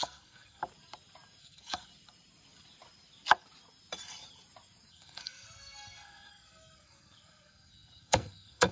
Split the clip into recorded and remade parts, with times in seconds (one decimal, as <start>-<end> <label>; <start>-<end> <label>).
0.0-0.6 remade; 0.6-1.4 recorded; 1.4-1.9 remade; 1.9-4.9 recorded; 4.9-8.7 remade